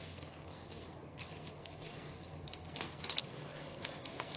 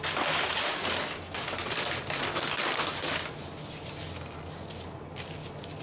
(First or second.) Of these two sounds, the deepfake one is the first